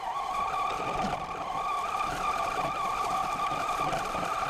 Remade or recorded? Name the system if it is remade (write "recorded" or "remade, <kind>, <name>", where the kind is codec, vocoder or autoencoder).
remade, vocoder, BigVGAN v2